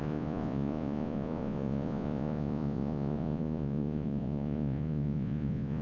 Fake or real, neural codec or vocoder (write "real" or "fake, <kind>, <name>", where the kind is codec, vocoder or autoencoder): fake, vocoder, Vocos